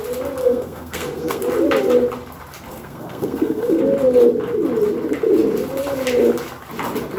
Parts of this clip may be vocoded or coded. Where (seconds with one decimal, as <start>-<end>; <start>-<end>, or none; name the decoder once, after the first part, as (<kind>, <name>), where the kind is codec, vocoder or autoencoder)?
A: 0.4-1.4 (codec, SNAC); 2.7-3.8